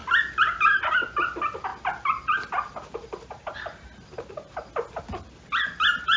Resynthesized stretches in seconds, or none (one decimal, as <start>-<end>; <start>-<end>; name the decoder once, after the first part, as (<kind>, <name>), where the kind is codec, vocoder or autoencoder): none